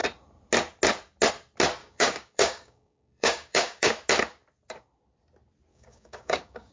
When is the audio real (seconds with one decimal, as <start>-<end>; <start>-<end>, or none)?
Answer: 0.0-1.8; 3.9-5.7